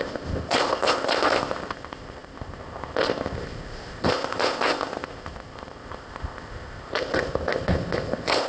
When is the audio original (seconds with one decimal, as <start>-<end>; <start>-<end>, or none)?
none